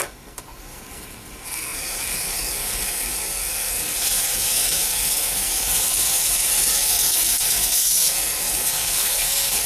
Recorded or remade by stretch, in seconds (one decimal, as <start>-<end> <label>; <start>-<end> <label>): 0.0-9.7 remade